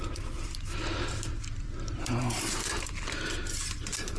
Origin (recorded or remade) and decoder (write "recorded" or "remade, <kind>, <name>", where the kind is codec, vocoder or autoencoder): remade, vocoder, BigVGAN v2